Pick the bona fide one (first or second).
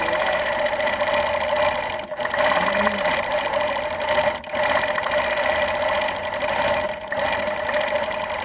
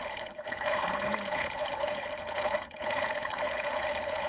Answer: first